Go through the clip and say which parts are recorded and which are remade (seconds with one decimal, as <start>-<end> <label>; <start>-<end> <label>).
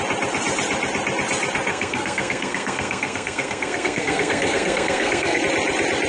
0.0-1.7 recorded; 1.7-5.4 remade; 5.4-6.1 recorded